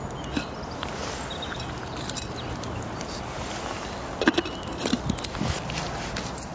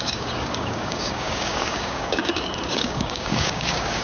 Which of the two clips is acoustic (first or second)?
first